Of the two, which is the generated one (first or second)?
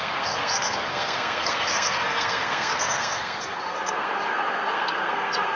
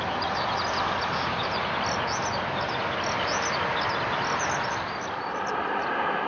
first